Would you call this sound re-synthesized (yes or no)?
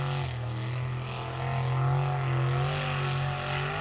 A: no